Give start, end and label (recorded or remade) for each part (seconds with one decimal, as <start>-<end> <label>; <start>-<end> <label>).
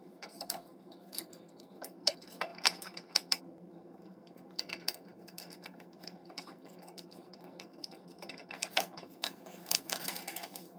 0.0-10.8 remade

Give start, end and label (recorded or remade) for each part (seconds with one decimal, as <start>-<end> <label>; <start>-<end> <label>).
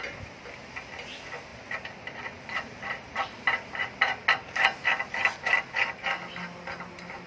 0.0-7.3 recorded